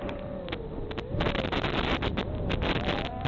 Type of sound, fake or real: real